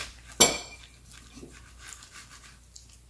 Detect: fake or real real